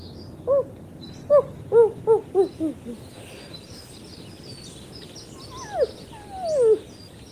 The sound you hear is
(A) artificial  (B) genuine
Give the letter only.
B